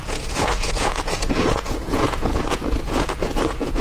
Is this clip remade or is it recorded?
remade